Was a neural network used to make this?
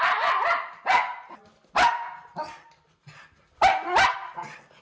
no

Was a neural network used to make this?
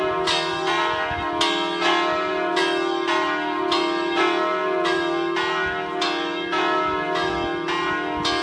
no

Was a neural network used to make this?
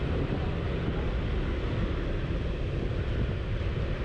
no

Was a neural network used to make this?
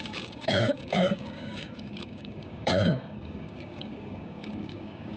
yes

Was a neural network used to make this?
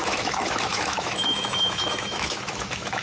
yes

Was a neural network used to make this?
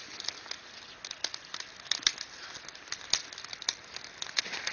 no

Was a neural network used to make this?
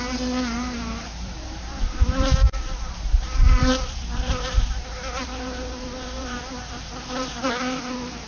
yes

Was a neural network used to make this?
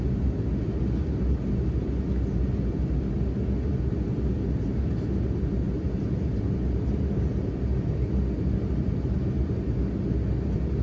no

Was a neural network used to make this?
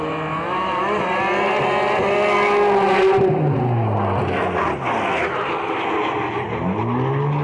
no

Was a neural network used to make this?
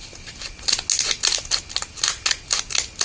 no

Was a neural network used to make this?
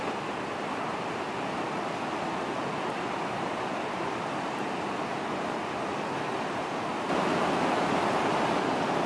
no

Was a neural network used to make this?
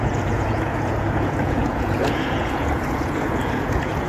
yes